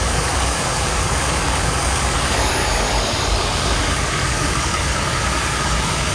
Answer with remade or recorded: remade